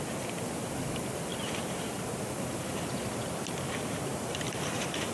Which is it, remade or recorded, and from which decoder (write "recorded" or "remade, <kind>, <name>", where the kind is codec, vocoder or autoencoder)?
recorded